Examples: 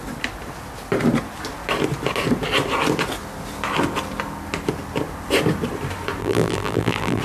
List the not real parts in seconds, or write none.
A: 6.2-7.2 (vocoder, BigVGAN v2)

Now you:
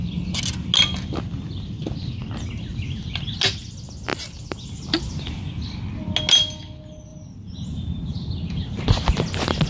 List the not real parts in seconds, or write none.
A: 7.1-9.2 (vocoder, BigVGAN v2)

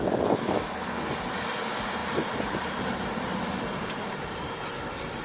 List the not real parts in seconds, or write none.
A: 2.0-4.5 (vocoder, BigVGAN v2)